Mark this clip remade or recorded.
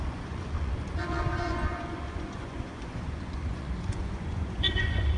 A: remade